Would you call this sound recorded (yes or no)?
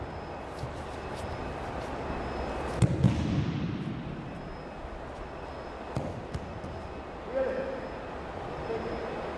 yes